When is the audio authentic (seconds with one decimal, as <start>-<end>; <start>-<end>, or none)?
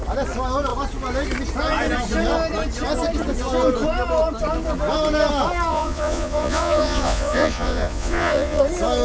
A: 0.0-5.7; 8.6-9.0